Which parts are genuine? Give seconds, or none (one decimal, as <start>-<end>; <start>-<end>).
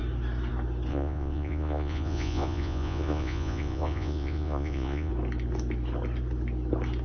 0.0-0.9; 5.1-7.0